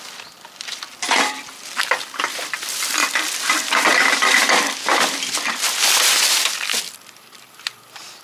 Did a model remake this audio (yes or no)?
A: yes